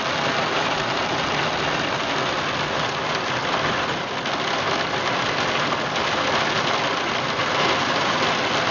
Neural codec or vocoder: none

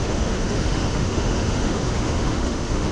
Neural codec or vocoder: autoencoder, DAC-VAE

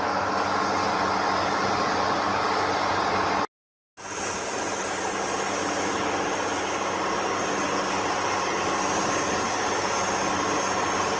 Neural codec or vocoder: none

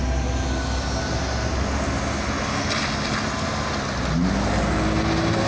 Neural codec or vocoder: none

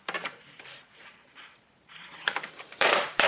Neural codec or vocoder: vocoder, BigVGAN v2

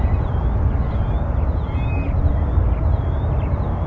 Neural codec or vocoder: none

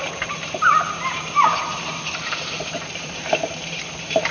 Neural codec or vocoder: vocoder, BigVGAN v2